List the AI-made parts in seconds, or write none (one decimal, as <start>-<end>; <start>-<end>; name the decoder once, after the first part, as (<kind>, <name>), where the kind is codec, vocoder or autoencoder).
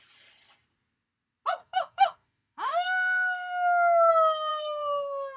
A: 1.6-4.1 (autoencoder, DAC-VAE); 4.5-5.4